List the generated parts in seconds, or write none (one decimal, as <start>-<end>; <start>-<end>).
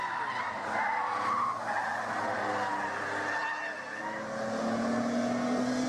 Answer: none